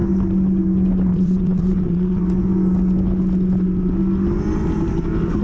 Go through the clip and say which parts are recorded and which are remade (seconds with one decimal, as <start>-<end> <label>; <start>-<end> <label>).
0.0-1.1 recorded; 1.1-2.2 remade; 2.2-5.4 recorded